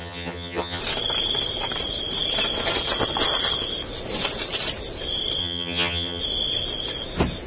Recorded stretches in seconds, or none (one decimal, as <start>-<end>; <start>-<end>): 0.8-5.4; 6.2-7.5